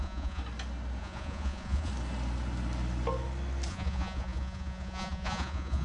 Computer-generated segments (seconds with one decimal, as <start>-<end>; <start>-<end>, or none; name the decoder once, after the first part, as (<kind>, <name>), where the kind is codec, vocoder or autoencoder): 0.0-0.4 (vocoder, Vocos); 1.0-1.9; 3.7-5.8